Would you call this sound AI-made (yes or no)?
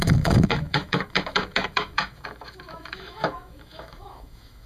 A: yes